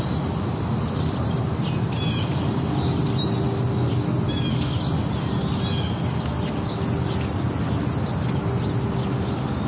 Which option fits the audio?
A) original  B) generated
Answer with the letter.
A